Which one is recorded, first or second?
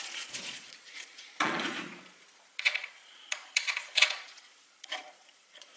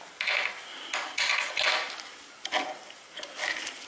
second